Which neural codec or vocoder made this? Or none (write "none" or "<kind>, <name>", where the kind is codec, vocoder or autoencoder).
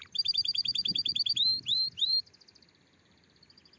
none